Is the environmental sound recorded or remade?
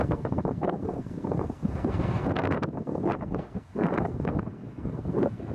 remade